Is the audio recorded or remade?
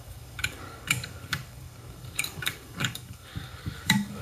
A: remade